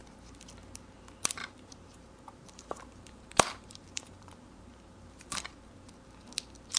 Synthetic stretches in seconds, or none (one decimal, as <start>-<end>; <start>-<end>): 1.4-5.5